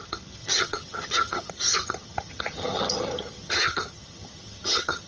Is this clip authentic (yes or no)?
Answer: no